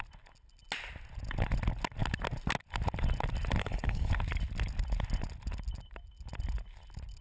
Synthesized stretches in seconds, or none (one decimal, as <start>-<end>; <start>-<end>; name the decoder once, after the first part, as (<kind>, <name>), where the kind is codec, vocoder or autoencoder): 3.6-4.1 (codec, HILCodec)